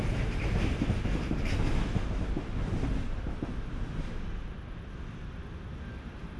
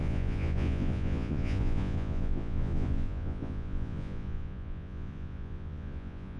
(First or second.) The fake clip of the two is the second